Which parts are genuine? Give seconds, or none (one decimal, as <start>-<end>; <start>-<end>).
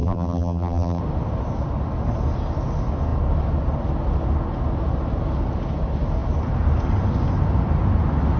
1.0-8.4